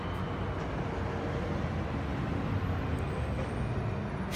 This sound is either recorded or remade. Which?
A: recorded